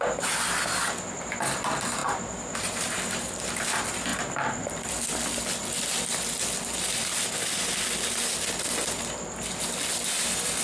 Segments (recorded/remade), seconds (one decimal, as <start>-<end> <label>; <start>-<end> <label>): 0.0-2.0 recorded; 2.0-3.5 remade; 3.5-10.6 recorded